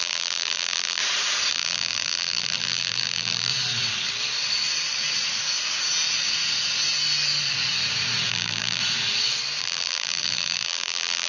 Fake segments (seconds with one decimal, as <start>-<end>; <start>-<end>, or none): 0.0-1.0; 1.5-3.5; 8.3-8.8; 9.6-11.3